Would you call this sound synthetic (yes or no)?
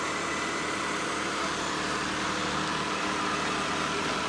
no